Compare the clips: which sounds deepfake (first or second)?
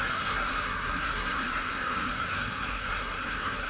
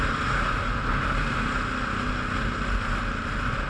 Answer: first